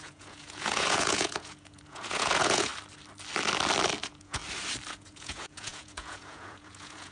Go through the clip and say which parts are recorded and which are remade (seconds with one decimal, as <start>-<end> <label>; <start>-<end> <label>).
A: 0.0-2.7 remade; 2.7-4.0 recorded; 4.0-4.4 remade; 4.4-4.9 recorded; 4.9-7.1 remade

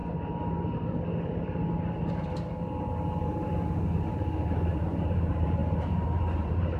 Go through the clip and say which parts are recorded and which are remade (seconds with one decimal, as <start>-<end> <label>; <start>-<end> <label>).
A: 0.0-4.1 recorded; 4.1-6.8 remade

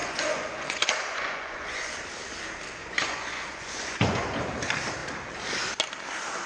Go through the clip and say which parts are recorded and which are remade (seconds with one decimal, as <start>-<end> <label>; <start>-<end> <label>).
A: 0.0-1.9 remade; 1.9-2.8 recorded; 2.8-4.5 remade; 4.5-6.5 recorded

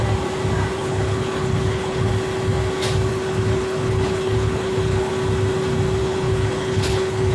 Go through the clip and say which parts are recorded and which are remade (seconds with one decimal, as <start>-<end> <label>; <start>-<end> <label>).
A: 0.0-0.8 recorded; 0.8-2.1 remade; 2.1-3.1 recorded; 3.1-5.1 remade; 5.1-6.0 recorded; 6.0-7.3 remade

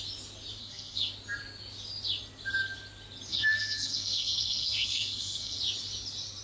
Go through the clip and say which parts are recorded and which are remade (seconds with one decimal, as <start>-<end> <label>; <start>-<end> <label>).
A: 0.0-0.6 recorded; 0.6-1.1 remade; 1.1-3.3 recorded; 3.3-5.6 remade; 5.6-6.4 recorded